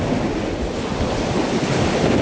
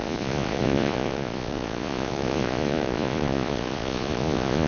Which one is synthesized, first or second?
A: second